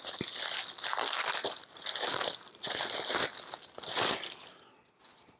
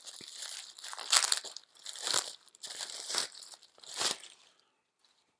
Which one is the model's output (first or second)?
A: second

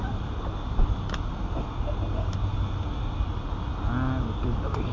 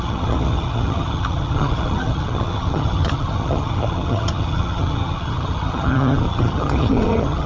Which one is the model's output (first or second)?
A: second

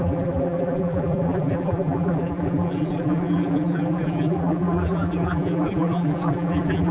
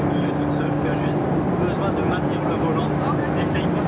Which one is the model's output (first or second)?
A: first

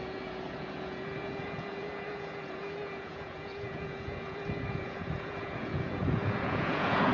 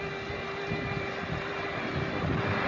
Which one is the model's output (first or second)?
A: first